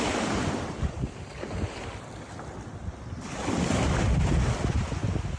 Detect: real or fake real